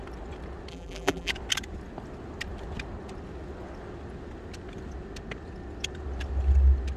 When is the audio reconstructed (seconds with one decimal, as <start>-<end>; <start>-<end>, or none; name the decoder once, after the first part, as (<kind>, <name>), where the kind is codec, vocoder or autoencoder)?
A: 0.7-1.3 (vocoder, BigVGAN v2)